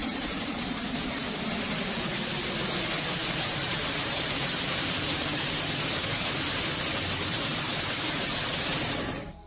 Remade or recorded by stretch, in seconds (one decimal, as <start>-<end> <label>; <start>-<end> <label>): 0.0-0.6 remade; 0.6-3.2 recorded; 3.2-5.5 remade; 5.5-7.5 recorded; 7.5-8.0 remade; 8.0-9.5 recorded